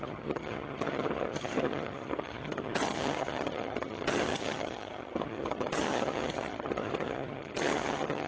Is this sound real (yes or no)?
no